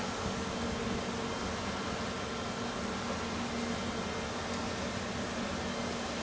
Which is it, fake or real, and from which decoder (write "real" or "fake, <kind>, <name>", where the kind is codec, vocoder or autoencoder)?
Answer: real